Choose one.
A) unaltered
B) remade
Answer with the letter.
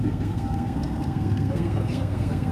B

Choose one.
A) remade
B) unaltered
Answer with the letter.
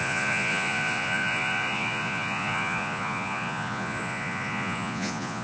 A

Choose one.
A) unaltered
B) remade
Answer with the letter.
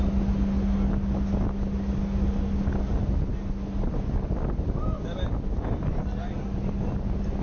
A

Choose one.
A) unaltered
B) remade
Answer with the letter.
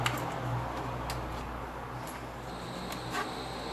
A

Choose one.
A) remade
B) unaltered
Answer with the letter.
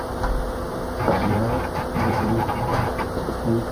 B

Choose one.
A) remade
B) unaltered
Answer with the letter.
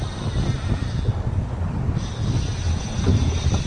B